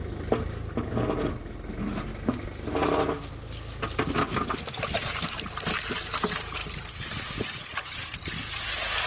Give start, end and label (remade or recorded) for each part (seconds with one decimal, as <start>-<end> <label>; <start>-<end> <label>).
0.0-9.1 recorded